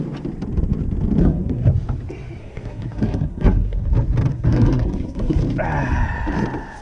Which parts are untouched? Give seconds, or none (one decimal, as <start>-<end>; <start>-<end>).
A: 0.0-1.2; 1.7-2.4; 3.9-4.3; 5.4-6.8